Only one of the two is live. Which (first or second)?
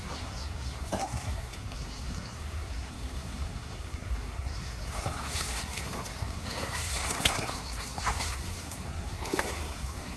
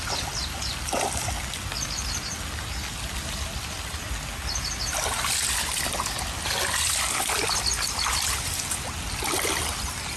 second